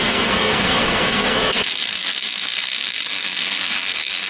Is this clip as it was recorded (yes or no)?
no